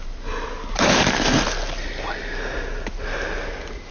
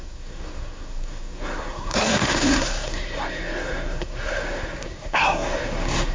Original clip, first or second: first